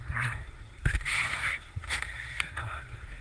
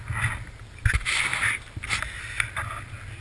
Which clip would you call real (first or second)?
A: second